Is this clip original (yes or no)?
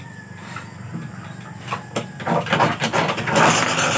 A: yes